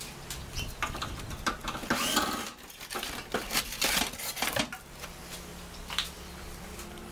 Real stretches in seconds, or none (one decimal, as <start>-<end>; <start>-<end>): 1.6-5.9

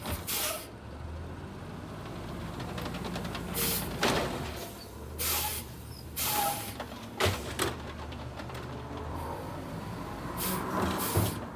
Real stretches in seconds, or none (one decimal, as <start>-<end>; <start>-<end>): 0.0-5.5; 10.6-11.6

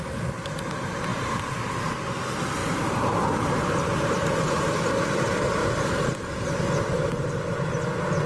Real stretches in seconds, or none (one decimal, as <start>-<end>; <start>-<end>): 0.0-1.1; 1.8-2.6; 4.9-5.6; 7.1-8.3